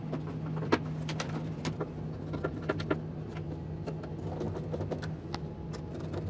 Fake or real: real